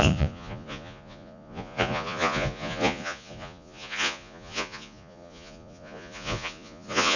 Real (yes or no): no